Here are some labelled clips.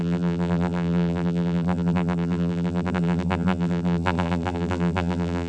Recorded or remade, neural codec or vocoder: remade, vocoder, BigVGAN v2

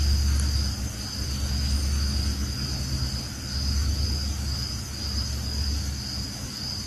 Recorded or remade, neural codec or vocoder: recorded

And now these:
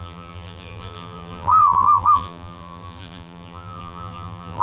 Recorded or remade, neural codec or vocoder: remade, vocoder, BigVGAN v2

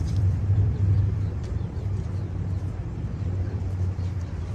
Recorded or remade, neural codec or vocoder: remade, vocoder, BigVGAN v2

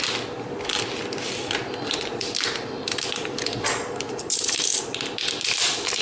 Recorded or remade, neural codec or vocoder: recorded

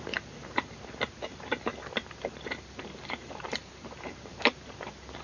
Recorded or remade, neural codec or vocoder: remade, vocoder, BigVGAN v2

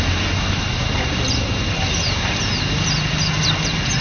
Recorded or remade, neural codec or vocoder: recorded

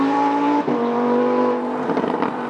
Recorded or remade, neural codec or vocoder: remade, vocoder, BigVGAN v2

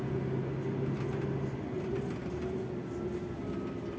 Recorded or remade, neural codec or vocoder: recorded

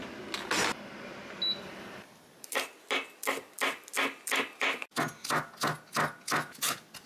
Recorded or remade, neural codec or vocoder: recorded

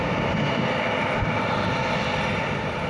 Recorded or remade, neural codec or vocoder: recorded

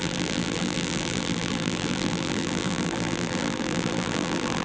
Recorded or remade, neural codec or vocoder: remade, vocoder, BigVGAN v2